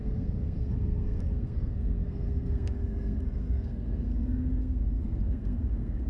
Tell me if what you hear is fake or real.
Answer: fake